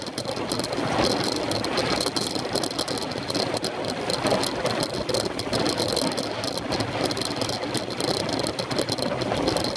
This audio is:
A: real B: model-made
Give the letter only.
A